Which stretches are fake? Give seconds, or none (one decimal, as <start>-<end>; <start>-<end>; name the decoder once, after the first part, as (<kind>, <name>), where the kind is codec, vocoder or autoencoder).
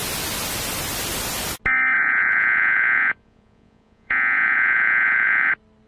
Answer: 2.0-5.5 (vocoder, Vocos)